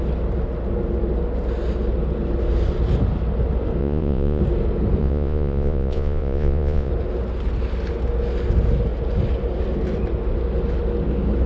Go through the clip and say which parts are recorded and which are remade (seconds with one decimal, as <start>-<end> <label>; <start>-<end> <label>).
0.0-3.8 recorded; 3.8-4.4 remade; 4.4-5.0 recorded; 5.0-6.9 remade; 6.9-11.5 recorded